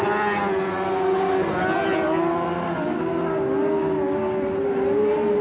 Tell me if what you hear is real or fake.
real